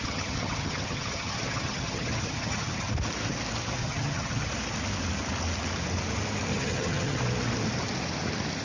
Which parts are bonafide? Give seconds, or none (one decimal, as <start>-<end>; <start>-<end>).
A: 2.9-3.8; 4.5-6.5; 7.2-8.6